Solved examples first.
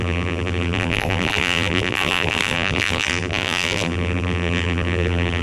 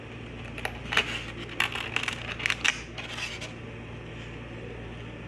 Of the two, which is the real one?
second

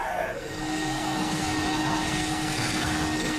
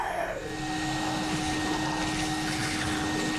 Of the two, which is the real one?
second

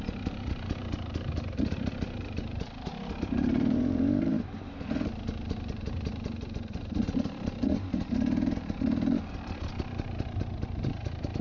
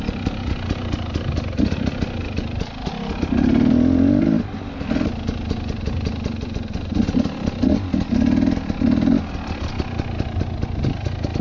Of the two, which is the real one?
second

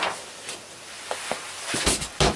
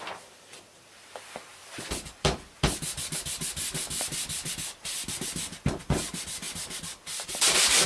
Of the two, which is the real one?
first